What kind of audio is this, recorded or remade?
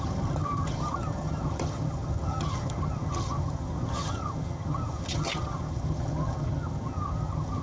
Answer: remade